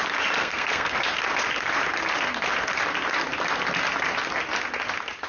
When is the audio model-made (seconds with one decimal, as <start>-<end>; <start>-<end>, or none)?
0.4-1.0